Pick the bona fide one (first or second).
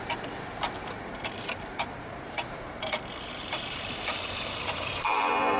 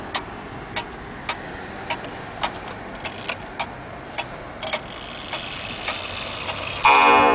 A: second